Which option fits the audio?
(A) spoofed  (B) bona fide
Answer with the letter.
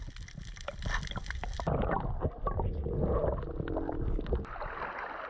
B